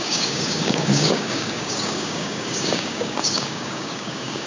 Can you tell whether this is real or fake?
fake